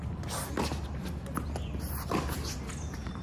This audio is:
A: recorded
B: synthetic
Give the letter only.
A